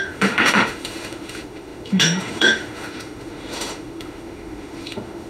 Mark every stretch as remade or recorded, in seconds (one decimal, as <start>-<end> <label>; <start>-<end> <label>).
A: 0.0-5.3 remade